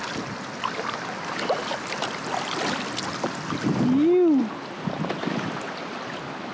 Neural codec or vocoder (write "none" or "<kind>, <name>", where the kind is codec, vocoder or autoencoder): none